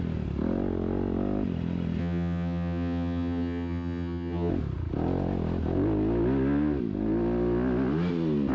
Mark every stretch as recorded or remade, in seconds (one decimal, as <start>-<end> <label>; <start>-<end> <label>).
0.0-2.0 recorded; 2.0-4.5 remade; 4.5-8.5 recorded